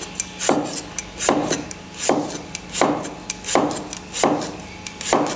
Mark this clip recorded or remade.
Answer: recorded